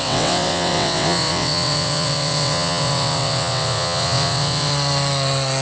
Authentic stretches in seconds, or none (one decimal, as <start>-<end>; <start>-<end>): 4.7-5.6